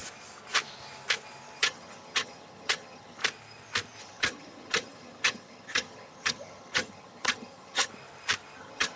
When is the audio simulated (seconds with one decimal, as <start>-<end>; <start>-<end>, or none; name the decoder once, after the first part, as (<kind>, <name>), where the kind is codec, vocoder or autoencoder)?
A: 1.6-3.2 (vocoder, HiFi-GAN); 4.0-7.9; 8.6-9.0